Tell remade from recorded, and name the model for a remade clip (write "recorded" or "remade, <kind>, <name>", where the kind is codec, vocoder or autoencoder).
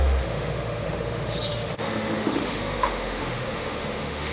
remade, autoencoder, DAC-VAE